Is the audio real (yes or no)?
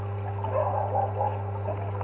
yes